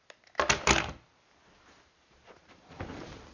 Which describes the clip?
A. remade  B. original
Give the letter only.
B